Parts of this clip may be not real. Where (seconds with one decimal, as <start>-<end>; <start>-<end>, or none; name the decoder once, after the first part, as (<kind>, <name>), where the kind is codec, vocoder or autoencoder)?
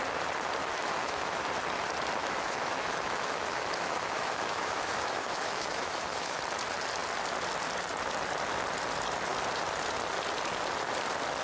0.6-1.4 (autoencoder, DAC-VAE); 2.2-6.4